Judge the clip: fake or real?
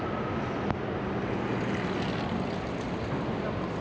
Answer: real